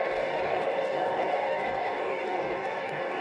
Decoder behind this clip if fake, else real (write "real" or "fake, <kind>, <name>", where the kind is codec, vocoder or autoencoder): fake, codec, DAC